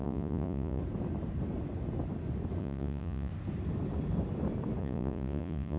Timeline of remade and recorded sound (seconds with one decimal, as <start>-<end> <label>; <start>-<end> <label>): 0.0-0.8 remade; 0.8-2.6 recorded; 2.6-3.3 remade; 3.3-4.8 recorded; 4.8-5.8 remade